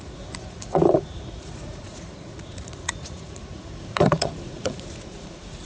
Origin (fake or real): fake